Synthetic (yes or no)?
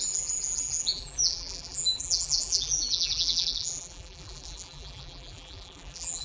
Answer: yes